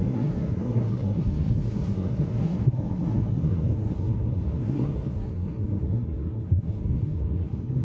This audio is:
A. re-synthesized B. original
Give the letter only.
A